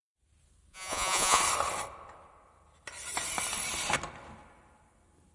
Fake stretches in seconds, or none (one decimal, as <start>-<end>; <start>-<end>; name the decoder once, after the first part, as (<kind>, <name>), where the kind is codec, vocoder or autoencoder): 0.7-1.4 (vocoder, Vocos)